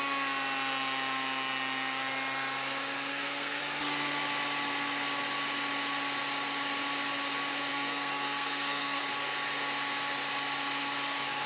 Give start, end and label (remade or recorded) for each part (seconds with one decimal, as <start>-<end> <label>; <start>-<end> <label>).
0.0-3.1 recorded; 3.1-3.6 remade; 3.6-7.7 recorded; 7.7-9.0 remade; 9.0-11.5 recorded